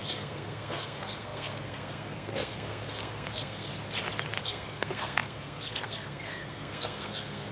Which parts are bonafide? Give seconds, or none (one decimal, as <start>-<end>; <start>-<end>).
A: 3.7-4.4